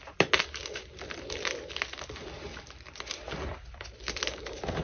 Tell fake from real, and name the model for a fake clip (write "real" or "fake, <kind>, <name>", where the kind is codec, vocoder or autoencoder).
real